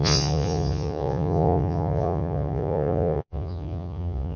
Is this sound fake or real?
fake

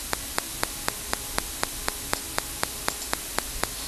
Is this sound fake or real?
real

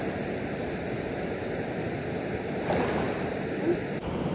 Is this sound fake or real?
real